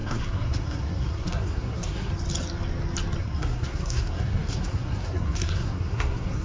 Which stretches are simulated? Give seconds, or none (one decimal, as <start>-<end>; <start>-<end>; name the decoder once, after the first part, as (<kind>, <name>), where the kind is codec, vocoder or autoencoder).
0.0-2.1 (codec, SNAC); 3.2-6.4